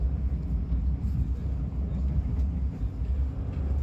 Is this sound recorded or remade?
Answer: recorded